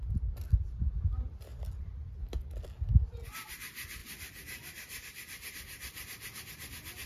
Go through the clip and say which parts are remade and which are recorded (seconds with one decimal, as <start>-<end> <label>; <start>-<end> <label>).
0.0-1.5 recorded; 1.5-2.1 remade; 2.1-4.0 recorded; 4.0-7.1 remade